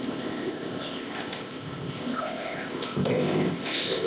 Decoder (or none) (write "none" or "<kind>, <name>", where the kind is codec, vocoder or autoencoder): codec, ZipCodec